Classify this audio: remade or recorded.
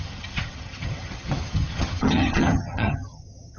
remade